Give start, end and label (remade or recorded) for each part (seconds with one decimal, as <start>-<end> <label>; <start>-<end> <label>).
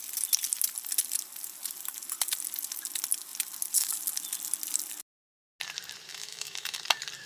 0.0-6.1 recorded; 6.1-6.8 remade; 6.8-7.3 recorded